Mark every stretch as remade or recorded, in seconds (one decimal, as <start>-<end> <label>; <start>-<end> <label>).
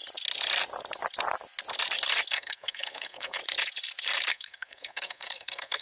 0.0-2.3 recorded; 2.3-3.4 remade; 3.4-4.3 recorded; 4.3-5.8 remade